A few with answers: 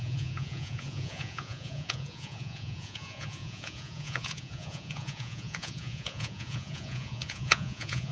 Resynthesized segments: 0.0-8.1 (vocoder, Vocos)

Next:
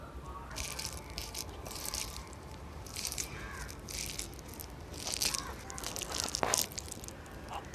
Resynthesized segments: 1.2-3.3 (vocoder, BigVGAN v2)

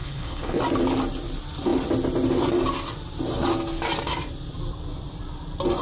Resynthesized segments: 0.0-0.6 (codec, HILCodec)

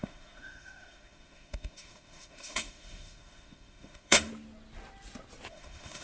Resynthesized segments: 0.0-4.3 (autoencoder, DAC-VAE); 5.5-6.0

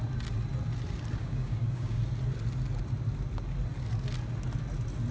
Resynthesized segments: 1.2-2.0 (codec, DAC)